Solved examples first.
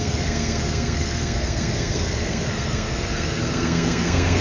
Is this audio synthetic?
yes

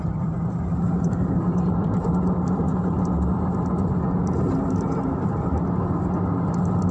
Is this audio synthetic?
yes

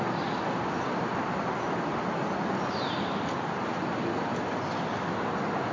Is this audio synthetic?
no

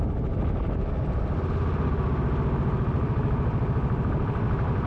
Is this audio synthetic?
no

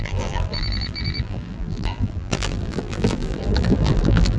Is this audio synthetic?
yes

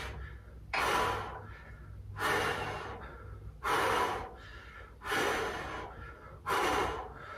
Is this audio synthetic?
no